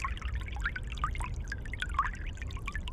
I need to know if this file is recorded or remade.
recorded